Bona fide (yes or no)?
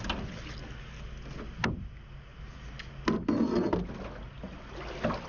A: yes